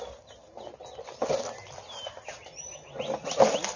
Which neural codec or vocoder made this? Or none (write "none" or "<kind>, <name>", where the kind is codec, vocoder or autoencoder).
none